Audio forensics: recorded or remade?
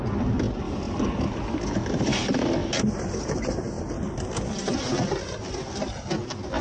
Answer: recorded